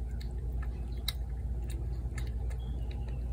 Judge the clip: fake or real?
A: real